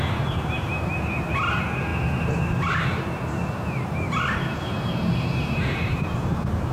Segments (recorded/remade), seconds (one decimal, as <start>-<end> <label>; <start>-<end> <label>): 0.0-6.7 recorded